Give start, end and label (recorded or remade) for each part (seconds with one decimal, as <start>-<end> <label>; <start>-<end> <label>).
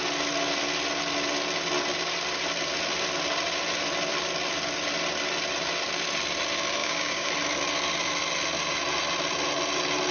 0.0-6.8 recorded; 6.8-7.3 remade; 7.3-10.1 recorded